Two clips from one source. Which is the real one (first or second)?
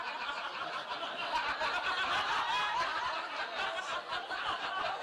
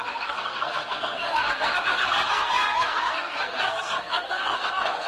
first